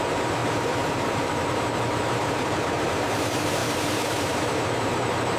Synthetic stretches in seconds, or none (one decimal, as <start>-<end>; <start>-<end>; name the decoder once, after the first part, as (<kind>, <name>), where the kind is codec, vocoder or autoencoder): 0.0-5.4 (vocoder, BigVGAN v2)